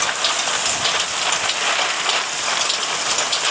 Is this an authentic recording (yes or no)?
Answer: yes